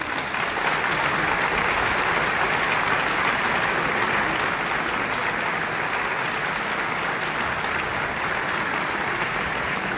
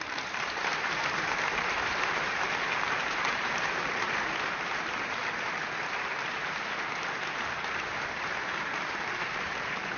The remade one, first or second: second